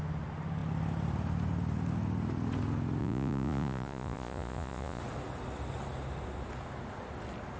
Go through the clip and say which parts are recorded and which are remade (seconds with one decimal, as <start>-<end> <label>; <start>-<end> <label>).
0.0-3.0 recorded; 3.0-5.0 remade; 5.0-7.6 recorded